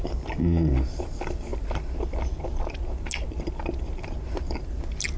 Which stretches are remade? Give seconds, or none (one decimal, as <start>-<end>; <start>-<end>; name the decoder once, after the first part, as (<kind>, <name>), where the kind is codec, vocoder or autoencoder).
none